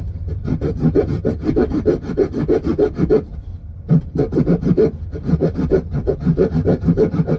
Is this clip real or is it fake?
fake